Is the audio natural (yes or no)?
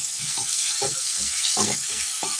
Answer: no